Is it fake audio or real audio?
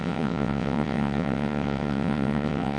fake